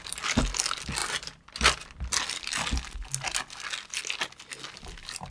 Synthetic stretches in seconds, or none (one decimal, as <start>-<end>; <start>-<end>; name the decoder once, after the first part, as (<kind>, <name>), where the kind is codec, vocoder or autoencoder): none